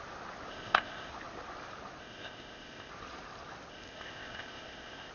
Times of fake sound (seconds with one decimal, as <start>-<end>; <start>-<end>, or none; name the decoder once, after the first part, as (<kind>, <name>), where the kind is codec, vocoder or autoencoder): 0.5-1.1 (codec, ZipCodec); 2.0-2.9; 3.7-5.1